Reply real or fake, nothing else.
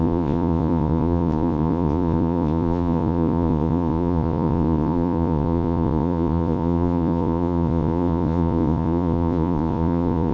fake